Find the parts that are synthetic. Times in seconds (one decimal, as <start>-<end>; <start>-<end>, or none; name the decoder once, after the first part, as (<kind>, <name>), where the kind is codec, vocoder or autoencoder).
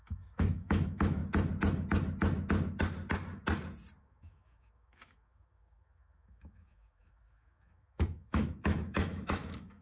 0.0-1.2 (autoencoder, DAC-VAE); 4.0-9.8